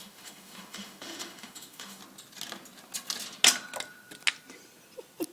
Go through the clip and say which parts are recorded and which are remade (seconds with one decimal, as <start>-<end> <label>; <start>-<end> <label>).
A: 0.0-2.0 remade; 2.0-5.3 recorded